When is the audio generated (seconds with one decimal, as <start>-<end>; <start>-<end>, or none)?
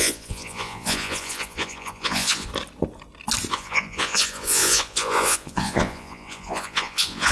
0.0-2.5; 3.5-7.3